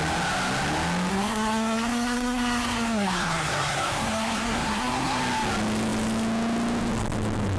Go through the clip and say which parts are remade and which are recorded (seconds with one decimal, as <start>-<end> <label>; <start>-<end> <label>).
0.0-1.1 recorded; 1.1-5.2 remade; 5.2-7.6 recorded